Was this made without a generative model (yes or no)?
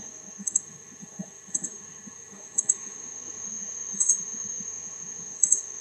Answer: no